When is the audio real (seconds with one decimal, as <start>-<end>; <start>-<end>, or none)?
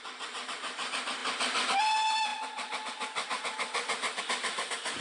0.0-5.0